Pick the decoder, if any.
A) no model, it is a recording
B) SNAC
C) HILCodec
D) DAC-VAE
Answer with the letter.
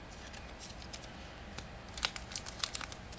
A